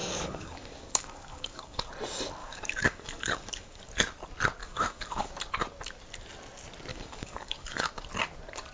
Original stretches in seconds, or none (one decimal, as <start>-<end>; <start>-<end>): 1.9-2.4; 3.9-4.6; 5.3-6.9; 7.9-8.7